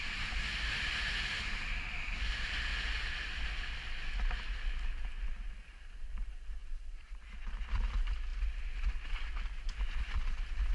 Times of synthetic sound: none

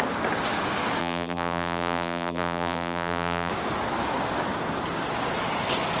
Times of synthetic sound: 1.0-3.5 (vocoder, BigVGAN v2)

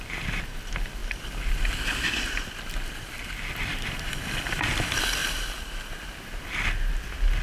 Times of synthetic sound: 5.2-6.0 (vocoder, BigVGAN v2)

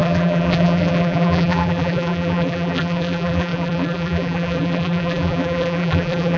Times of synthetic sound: 0.0-6.4 (vocoder, BigVGAN v2)

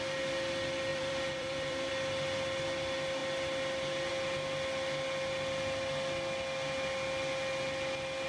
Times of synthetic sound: 0.9-1.9 (vocoder, BigVGAN v2)

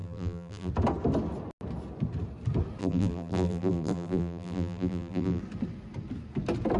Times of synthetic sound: 0.0-0.7 (vocoder, BigVGAN v2); 2.8-5.4

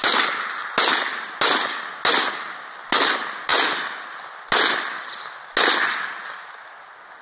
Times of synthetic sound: none

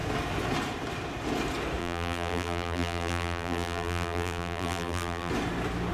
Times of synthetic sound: 1.8-5.3 (vocoder, BigVGAN v2)